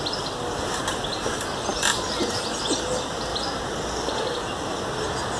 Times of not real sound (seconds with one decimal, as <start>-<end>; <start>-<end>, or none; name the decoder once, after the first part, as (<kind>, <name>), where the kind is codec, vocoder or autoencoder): 1.7-2.4 (vocoder, BigVGAN v2)